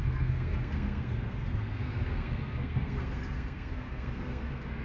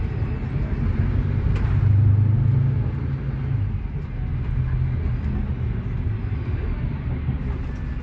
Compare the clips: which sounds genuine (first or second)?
second